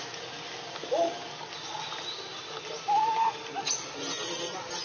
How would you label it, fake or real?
real